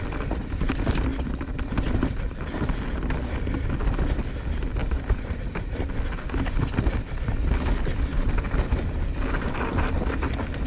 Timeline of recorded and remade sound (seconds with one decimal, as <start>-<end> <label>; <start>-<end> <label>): 0.0-4.8 recorded; 4.8-5.4 remade; 5.4-10.7 recorded